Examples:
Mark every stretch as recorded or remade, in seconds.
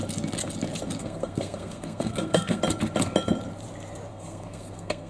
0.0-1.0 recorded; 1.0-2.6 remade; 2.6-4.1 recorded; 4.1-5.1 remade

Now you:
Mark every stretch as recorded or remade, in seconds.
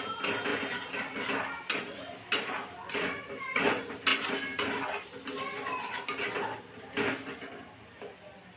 0.0-8.6 recorded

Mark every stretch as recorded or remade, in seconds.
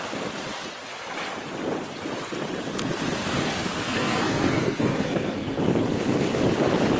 0.0-3.2 recorded; 3.2-5.6 remade; 5.6-7.0 recorded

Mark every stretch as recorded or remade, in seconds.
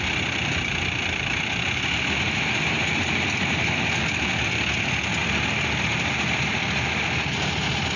0.0-8.0 recorded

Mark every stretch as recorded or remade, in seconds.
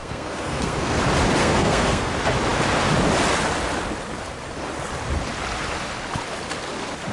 0.0-1.0 remade; 1.0-1.4 recorded; 1.4-2.1 remade; 2.1-7.1 recorded